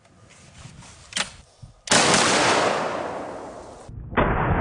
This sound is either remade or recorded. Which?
recorded